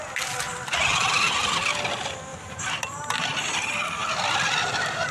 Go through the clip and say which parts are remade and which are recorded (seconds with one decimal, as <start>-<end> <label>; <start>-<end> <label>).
0.0-2.3 recorded; 2.3-2.8 remade; 2.8-5.1 recorded

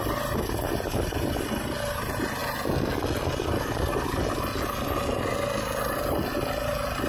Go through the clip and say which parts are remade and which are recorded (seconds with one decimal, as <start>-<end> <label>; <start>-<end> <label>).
0.0-7.1 recorded

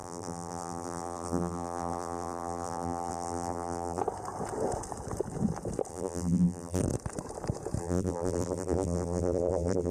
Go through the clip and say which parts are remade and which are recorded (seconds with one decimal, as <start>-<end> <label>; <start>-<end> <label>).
0.0-4.0 remade; 4.0-5.9 recorded; 5.9-6.8 remade; 6.8-7.8 recorded; 7.8-9.9 remade

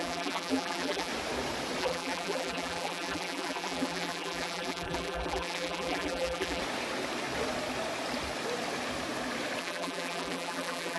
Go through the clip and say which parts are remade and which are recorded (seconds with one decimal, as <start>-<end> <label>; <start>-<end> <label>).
0.0-1.1 remade; 1.1-1.8 recorded; 1.8-6.6 remade; 6.6-9.6 recorded; 9.6-11.0 remade

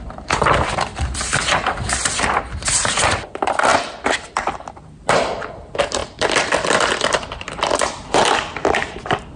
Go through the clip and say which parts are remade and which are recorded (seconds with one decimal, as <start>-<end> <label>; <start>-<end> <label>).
0.0-9.4 remade

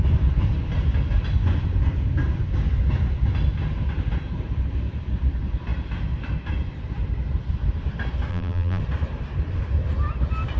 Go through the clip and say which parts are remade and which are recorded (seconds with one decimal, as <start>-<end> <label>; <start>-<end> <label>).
0.0-8.3 recorded; 8.3-8.8 remade; 8.8-10.6 recorded

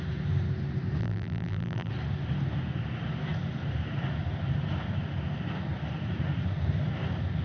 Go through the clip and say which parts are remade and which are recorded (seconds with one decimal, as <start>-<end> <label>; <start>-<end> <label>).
0.0-1.0 recorded; 1.0-1.9 remade; 1.9-7.4 recorded

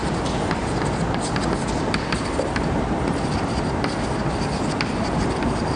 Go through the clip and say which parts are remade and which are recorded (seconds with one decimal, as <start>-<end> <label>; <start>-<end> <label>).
0.0-5.8 recorded